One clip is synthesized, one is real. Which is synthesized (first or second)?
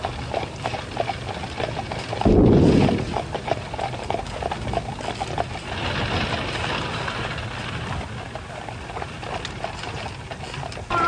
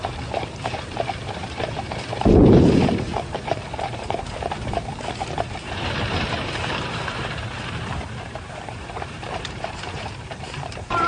second